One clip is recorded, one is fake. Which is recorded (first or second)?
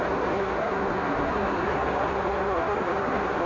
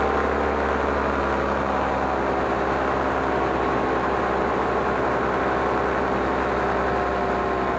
second